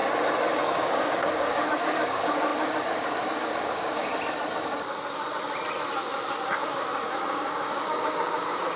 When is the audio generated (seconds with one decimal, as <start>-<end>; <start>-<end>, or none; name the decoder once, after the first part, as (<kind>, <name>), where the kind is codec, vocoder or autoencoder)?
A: 0.6-4.1 (codec, DAC); 6.6-8.8